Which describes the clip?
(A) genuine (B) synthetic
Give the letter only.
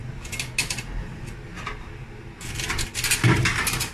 A